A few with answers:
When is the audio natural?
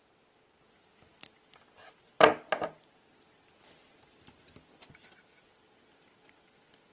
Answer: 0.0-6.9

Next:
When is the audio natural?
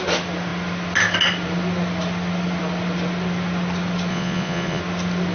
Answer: 0.0-4.1; 4.8-5.3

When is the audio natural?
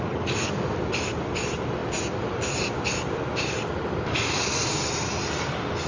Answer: 0.0-5.9